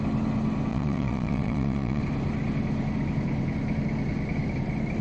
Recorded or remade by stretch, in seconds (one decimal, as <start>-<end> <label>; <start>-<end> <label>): 0.0-0.7 recorded; 0.7-2.0 remade; 2.0-5.0 recorded